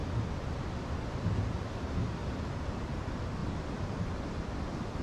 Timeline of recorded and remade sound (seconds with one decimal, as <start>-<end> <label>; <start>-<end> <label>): 0.0-0.9 recorded; 0.9-2.2 remade; 2.2-2.8 recorded; 2.8-3.4 remade; 3.4-4.2 recorded; 4.2-5.0 remade